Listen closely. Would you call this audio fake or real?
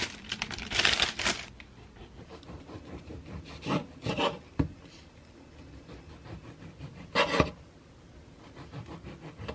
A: real